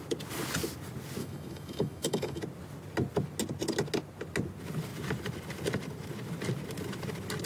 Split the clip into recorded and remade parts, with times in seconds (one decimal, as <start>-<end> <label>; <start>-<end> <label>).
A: 0.0-1.2 recorded; 1.2-2.4 remade; 2.4-7.5 recorded